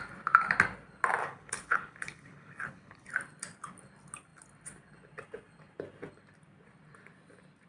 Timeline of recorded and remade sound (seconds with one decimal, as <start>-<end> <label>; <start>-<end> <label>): 0.0-1.2 recorded; 1.2-3.1 remade; 3.1-7.7 recorded